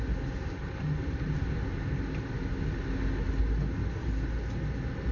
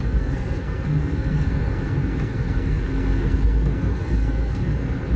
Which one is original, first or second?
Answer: first